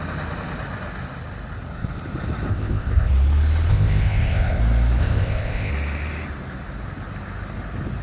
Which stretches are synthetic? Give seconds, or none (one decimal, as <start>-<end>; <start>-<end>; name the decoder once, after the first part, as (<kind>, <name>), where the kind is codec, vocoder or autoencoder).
2.5-3.1 (codec, ZipCodec); 3.7-4.6; 5.0-5.7